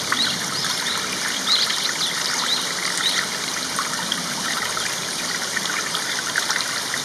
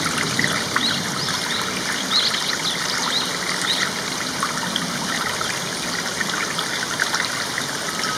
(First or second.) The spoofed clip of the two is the first